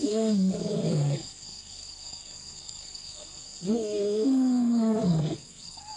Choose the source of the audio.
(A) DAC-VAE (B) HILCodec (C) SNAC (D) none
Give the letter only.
C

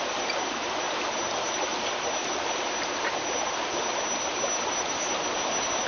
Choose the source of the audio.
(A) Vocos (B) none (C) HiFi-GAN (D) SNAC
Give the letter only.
B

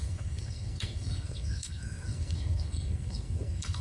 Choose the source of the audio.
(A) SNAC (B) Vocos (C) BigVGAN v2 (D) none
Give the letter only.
A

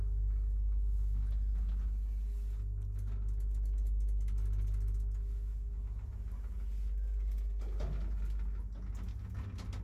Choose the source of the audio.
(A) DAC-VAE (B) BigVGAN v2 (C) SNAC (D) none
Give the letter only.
D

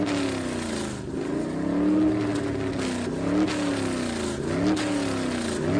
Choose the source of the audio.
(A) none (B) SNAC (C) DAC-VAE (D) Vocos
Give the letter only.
A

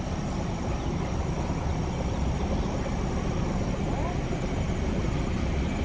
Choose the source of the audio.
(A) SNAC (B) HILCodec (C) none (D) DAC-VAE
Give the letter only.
C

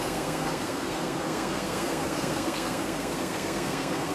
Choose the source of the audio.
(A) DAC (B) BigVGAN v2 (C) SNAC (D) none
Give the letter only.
C